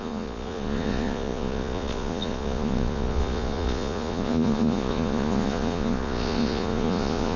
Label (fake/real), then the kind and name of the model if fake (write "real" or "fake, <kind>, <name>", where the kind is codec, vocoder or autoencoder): fake, vocoder, Vocos